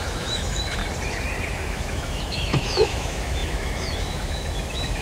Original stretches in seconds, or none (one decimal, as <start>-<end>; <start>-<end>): 0.8-1.5